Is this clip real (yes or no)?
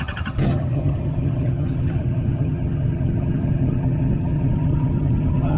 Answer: no